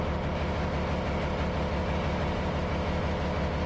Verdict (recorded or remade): recorded